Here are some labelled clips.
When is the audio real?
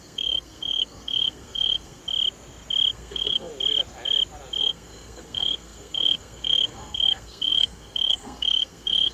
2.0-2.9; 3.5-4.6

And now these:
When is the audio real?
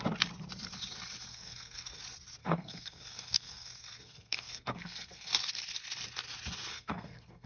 0.0-1.3; 2.0-2.4; 5.3-6.7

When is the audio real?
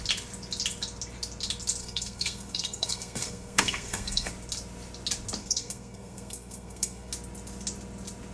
0.0-1.8; 4.3-5.4; 7.1-8.3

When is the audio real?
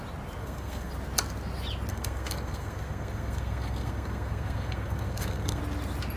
0.0-0.4; 0.9-1.9; 5.6-6.2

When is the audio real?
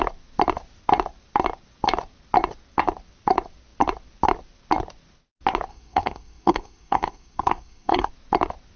0.0-5.7; 8.1-8.8